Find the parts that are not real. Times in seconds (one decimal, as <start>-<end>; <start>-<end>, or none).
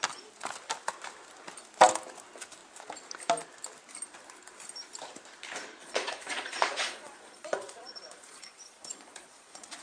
5.8-9.8